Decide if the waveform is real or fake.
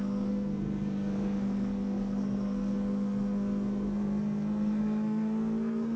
fake